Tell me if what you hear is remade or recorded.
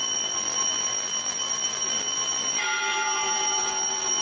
remade